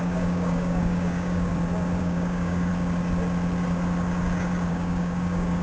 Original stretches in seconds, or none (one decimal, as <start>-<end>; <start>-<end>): 1.5-2.0; 2.7-4.7